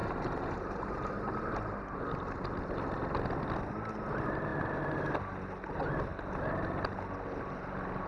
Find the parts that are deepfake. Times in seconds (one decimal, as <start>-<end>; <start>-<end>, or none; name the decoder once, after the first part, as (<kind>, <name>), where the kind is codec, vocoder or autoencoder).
0.0-2.0 (vocoder, BigVGAN v2)